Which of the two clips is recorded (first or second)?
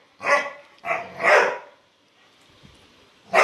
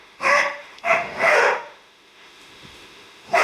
first